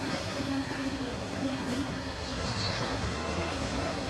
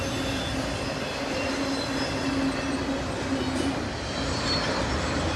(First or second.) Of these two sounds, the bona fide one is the second